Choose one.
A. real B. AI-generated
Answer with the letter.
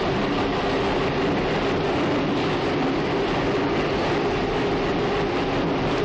A